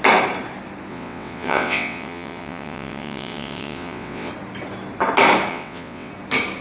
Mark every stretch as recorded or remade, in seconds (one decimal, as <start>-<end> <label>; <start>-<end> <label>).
0.0-0.9 recorded; 0.9-4.3 remade; 4.3-5.5 recorded; 5.5-6.1 remade; 6.1-6.6 recorded